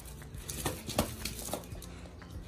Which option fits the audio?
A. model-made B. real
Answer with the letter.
B